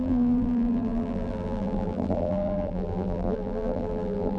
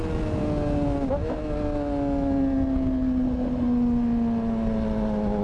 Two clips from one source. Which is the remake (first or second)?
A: first